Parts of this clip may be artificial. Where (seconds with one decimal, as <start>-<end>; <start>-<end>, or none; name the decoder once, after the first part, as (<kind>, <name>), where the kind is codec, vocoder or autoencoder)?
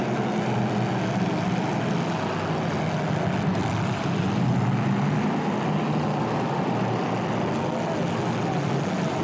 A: none